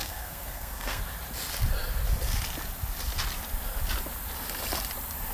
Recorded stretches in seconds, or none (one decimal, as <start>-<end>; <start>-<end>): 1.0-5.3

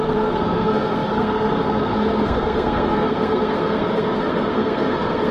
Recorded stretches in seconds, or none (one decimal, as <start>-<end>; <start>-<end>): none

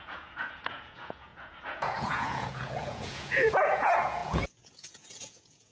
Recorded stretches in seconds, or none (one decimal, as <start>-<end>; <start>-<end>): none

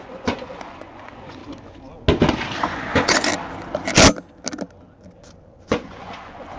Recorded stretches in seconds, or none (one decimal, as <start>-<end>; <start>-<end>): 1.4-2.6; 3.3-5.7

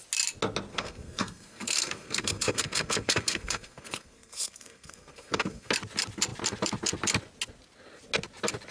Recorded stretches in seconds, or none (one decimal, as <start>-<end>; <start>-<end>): 0.0-0.7; 5.7-8.7

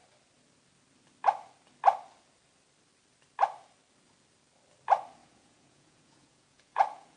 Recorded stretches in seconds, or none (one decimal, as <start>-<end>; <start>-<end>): 0.0-5.2